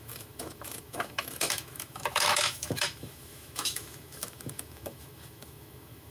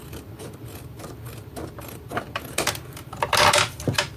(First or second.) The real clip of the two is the second